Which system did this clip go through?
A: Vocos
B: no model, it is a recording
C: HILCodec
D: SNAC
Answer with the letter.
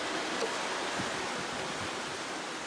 B